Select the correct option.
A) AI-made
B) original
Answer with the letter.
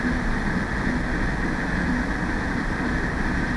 B